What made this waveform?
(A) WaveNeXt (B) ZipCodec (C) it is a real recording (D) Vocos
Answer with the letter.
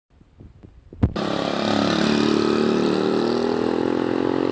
C